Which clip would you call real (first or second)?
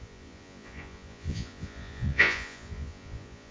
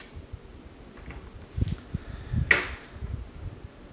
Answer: second